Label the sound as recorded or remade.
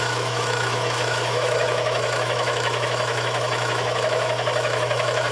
remade